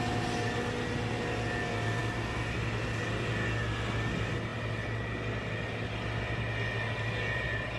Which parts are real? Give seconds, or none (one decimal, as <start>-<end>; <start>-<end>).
0.0-7.8